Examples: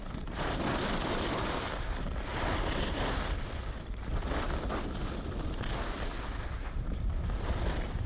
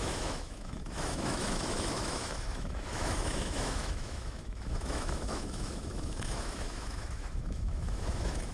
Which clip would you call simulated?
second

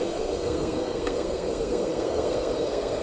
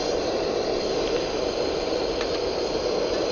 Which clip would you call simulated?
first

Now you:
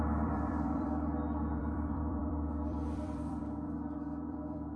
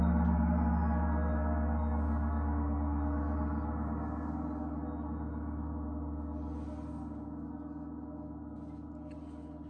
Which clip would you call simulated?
first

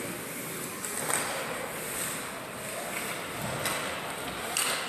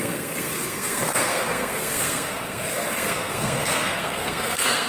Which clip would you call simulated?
second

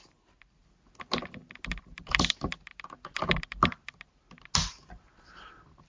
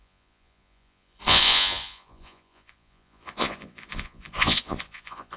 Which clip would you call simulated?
second